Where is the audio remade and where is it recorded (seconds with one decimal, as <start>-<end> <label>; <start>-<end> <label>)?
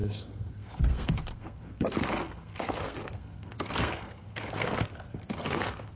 0.0-6.0 remade